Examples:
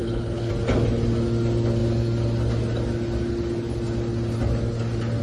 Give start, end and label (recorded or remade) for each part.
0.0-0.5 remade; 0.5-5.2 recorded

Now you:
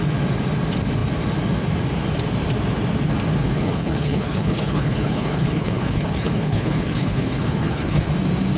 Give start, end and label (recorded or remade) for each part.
0.0-3.4 recorded; 3.4-8.1 remade; 8.1-8.6 recorded

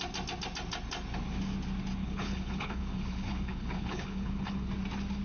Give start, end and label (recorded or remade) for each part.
0.0-2.0 recorded; 2.0-4.7 remade; 4.7-5.2 recorded

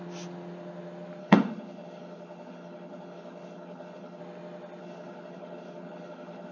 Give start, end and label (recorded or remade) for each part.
0.0-1.2 recorded; 1.2-4.2 remade; 4.2-4.8 recorded; 4.8-6.5 remade

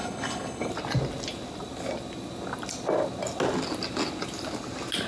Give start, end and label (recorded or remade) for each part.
0.0-0.7 remade; 0.7-5.1 recorded